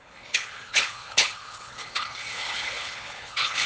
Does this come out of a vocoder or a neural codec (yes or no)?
yes